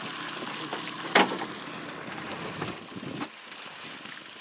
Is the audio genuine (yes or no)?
yes